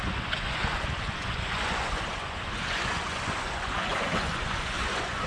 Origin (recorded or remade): remade